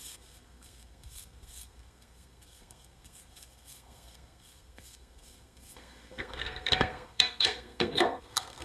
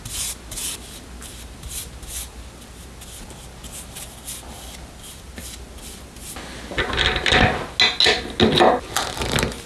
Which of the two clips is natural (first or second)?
second